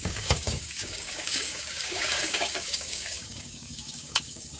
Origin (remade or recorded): remade